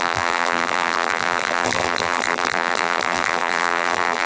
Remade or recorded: remade